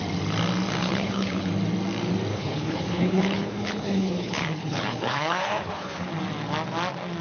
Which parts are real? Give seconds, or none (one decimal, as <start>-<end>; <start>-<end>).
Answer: 0.0-0.8; 1.5-2.3; 6.2-7.2